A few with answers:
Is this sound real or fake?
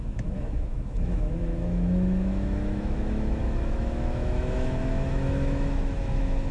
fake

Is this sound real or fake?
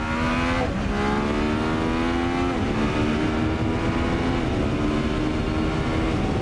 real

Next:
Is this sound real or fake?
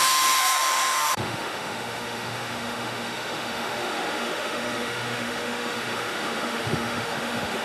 fake